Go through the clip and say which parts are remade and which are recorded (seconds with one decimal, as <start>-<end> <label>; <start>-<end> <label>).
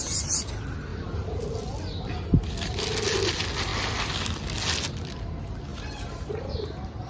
0.0-0.9 recorded; 0.9-1.5 remade; 1.5-5.7 recorded; 5.7-6.5 remade; 6.5-7.1 recorded